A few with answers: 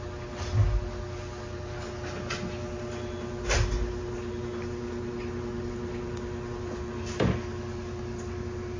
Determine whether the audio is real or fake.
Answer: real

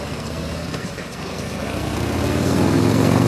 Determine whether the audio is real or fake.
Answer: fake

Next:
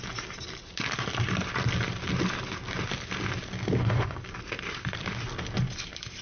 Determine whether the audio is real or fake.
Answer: real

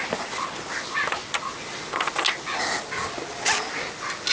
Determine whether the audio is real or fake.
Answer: real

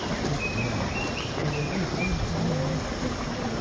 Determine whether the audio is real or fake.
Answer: real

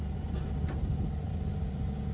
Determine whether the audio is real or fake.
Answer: real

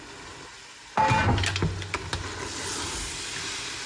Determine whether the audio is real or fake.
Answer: real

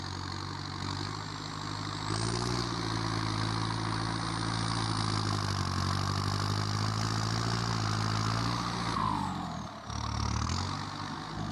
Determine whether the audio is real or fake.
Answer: real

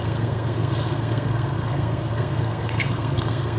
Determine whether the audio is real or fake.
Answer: fake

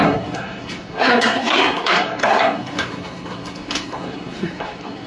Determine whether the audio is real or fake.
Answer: fake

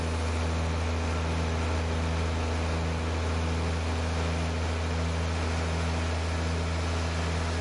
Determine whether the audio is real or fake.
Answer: real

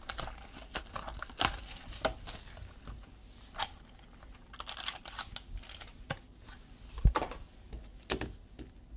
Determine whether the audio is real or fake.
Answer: real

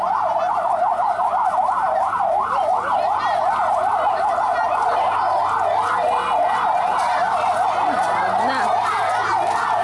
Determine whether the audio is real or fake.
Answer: real